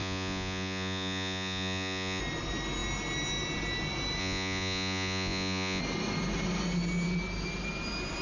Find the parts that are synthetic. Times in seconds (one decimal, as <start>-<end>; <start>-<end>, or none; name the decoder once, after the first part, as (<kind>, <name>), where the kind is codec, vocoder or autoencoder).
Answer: 0.0-2.2 (vocoder, Vocos); 4.2-5.8